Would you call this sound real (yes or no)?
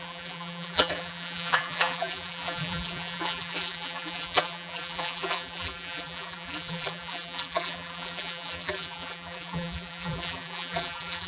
no